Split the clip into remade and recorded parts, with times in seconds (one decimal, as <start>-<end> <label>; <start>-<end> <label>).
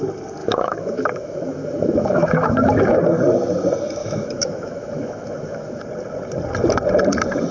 0.0-0.4 recorded; 0.4-3.0 remade; 3.0-4.0 recorded; 4.0-5.8 remade; 5.8-7.5 recorded